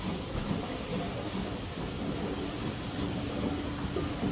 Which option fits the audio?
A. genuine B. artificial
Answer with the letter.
A